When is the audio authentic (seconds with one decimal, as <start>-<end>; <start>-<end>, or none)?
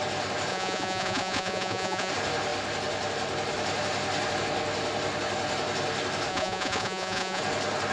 0.0-0.5; 2.1-6.3; 7.4-7.9